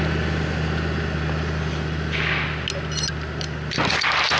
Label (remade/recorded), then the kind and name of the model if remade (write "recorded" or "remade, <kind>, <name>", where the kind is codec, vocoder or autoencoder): recorded